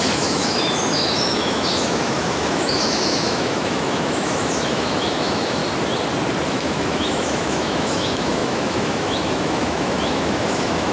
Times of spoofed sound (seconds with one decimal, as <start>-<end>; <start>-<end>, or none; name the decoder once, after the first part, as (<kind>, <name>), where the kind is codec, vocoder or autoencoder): 0.0-5.6 (autoencoder, DAC-VAE); 6.5-10.9